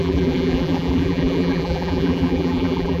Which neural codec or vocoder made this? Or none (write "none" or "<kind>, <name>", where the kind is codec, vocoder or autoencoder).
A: vocoder, BigVGAN v2